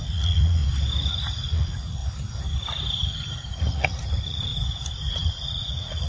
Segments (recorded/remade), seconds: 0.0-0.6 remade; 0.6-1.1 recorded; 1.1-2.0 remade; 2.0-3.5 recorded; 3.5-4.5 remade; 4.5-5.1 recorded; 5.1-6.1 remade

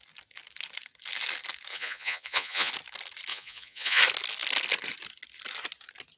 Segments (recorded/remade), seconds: 0.0-1.7 recorded; 1.7-2.7 remade; 2.7-3.3 recorded; 3.3-4.0 remade; 4.0-6.2 recorded